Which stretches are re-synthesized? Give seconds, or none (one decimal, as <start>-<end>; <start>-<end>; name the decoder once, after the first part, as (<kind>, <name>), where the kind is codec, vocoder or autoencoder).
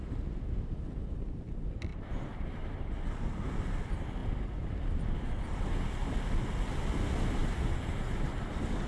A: 1.9-3.0 (vocoder, BigVGAN v2); 7.4-8.9